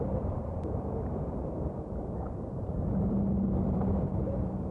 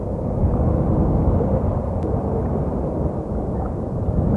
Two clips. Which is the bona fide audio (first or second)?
second